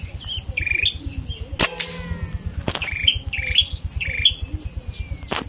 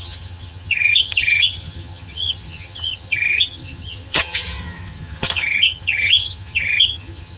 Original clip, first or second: first